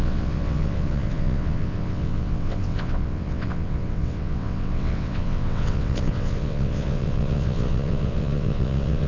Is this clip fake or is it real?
fake